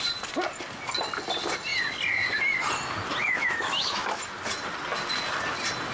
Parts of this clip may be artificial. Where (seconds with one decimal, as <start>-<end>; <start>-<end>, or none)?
3.2-4.2